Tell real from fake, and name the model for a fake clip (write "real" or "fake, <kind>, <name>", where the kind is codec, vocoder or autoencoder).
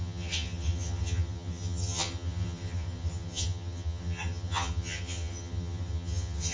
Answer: fake, vocoder, HiFi-GAN